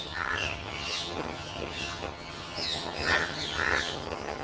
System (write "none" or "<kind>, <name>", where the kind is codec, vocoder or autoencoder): vocoder, HiFi-GAN